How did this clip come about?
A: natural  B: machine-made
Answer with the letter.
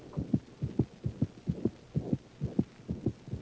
A